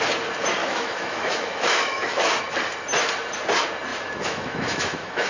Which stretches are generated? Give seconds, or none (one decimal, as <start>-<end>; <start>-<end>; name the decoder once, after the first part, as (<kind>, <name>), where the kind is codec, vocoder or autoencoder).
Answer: 0.6-2.4 (autoencoder, DAC-VAE); 3.9-5.3